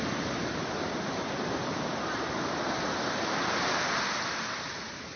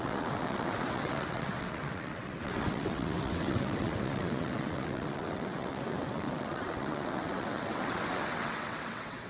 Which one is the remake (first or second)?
second